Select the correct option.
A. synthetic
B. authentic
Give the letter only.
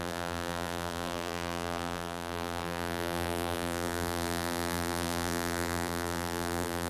A